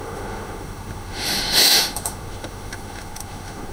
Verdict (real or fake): fake